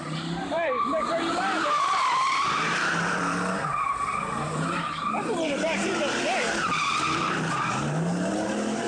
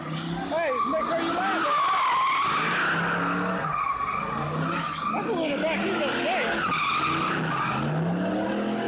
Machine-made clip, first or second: first